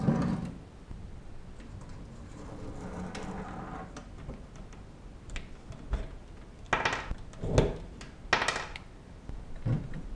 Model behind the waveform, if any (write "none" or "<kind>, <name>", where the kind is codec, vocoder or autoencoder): none